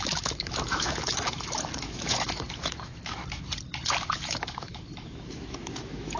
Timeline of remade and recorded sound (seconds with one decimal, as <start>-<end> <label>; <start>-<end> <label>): 0.0-3.2 remade; 3.2-4.1 recorded; 4.1-6.2 remade